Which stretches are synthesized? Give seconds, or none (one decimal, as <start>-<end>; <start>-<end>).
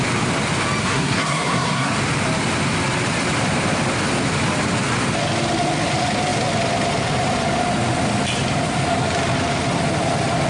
0.8-1.9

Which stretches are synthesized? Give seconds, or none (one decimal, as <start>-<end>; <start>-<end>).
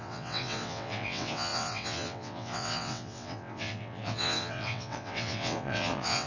0.0-6.3